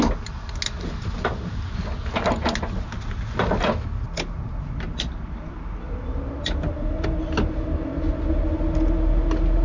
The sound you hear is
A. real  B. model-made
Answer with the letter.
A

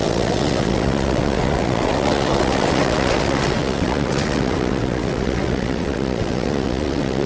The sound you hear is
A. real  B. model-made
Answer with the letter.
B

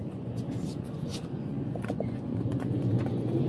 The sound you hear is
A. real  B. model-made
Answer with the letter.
B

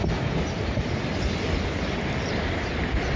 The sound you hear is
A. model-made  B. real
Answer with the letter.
B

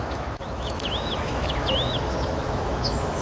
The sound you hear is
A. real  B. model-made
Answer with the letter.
B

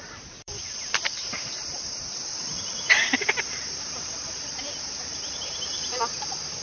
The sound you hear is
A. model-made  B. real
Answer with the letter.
A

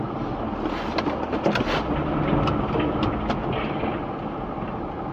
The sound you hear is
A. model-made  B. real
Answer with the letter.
B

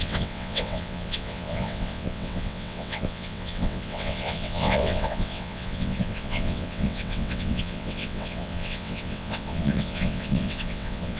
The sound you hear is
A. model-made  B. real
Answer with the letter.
A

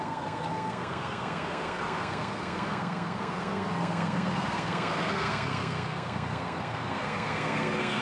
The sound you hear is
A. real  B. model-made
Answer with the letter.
B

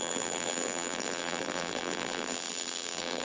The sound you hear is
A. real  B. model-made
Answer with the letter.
B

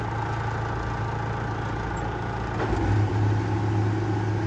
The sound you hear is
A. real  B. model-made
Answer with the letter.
A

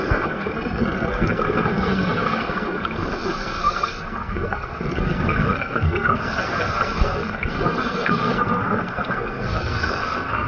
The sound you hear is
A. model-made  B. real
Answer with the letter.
A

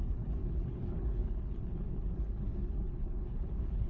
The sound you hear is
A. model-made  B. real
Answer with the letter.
A